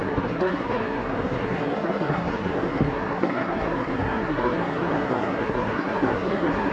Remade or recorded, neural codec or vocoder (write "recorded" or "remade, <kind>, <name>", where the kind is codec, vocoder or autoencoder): remade, codec, SNAC